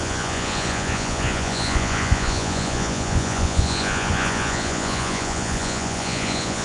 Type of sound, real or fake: fake